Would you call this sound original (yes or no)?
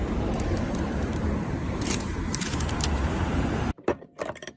no